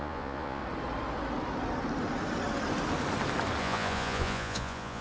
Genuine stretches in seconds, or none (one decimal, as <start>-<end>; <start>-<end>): 0.6-3.6

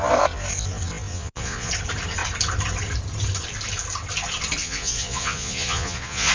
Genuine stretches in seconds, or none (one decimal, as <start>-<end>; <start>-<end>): 0.0-1.1; 1.7-4.6

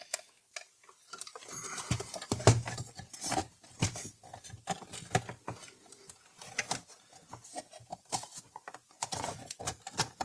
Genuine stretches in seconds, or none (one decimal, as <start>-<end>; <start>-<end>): 0.0-8.3; 9.6-10.2

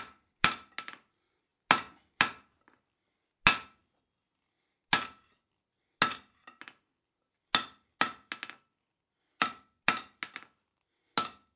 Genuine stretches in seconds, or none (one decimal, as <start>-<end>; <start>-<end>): 0.0-11.6

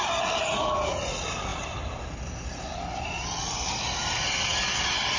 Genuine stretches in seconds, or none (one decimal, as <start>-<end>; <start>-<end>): 0.0-5.2

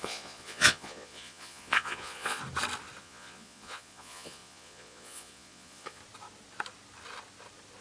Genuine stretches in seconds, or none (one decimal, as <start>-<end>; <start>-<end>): 2.4-3.0; 6.0-7.8